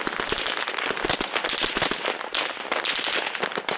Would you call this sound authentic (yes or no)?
yes